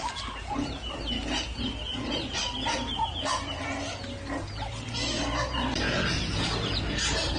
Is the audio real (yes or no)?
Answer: yes